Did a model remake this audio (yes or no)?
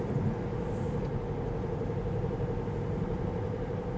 no